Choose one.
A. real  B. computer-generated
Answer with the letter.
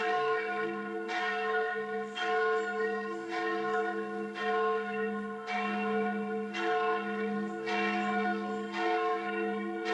B